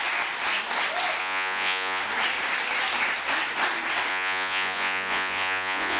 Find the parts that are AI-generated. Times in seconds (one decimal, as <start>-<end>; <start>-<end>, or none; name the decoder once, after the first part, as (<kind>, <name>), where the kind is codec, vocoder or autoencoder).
1.2-2.0 (vocoder, Vocos); 4.1-6.0